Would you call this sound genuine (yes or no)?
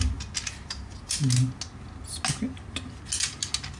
yes